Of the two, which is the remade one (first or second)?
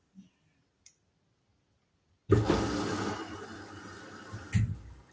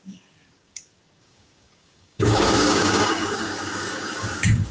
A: second